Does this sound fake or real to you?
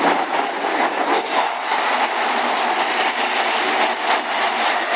real